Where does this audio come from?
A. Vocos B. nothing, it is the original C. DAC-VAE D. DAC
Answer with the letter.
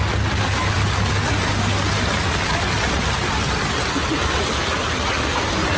B